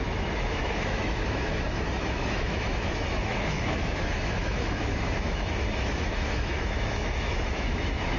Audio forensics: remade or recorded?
remade